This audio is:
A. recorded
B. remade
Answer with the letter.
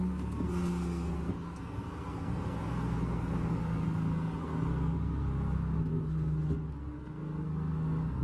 B